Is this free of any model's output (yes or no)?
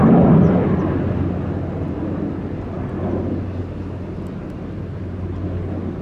yes